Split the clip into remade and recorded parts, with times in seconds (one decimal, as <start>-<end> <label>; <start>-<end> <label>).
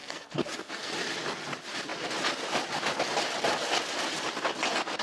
0.0-0.9 remade; 0.9-5.0 recorded